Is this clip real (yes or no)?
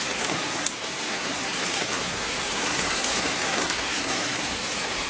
no